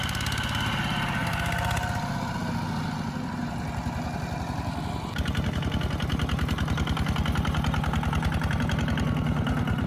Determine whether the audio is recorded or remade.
recorded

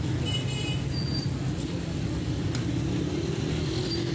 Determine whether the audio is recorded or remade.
recorded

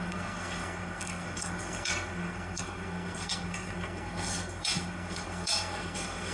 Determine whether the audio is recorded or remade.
remade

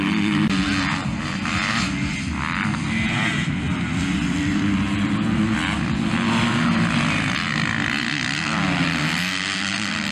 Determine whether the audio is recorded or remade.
recorded